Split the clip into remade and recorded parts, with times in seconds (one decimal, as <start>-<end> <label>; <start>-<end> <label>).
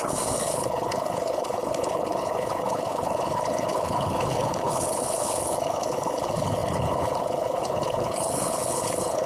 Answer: 0.0-9.3 remade